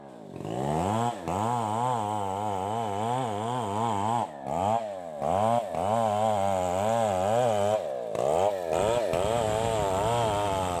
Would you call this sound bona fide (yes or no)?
yes